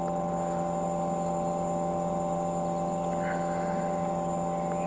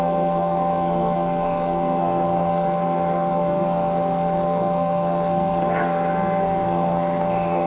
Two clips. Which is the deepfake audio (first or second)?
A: second